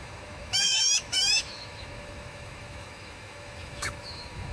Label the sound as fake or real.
fake